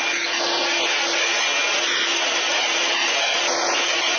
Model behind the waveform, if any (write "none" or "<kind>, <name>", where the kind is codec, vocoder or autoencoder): none